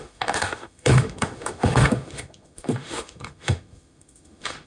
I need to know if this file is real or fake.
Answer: fake